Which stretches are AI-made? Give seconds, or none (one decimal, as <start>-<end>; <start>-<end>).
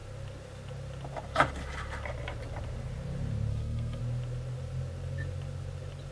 3.5-4.0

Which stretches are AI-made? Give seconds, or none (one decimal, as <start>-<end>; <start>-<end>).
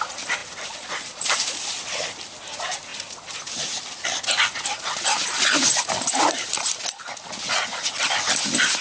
0.4-1.6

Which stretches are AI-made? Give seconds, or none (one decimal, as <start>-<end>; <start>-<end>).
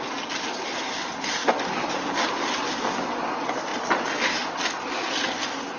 none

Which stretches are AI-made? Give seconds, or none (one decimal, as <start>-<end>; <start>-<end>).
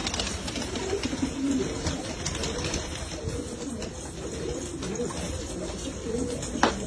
none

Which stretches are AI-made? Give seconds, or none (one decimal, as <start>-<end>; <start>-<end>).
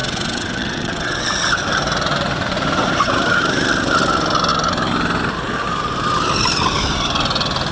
0.0-1.3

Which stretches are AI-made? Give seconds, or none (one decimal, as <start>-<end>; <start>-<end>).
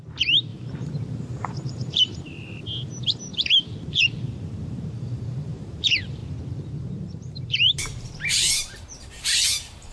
0.0-6.2; 6.7-9.9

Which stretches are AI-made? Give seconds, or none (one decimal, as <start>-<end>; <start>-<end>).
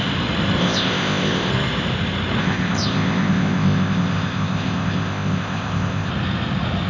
0.6-1.5; 2.4-6.1